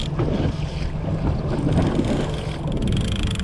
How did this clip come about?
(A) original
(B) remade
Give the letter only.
A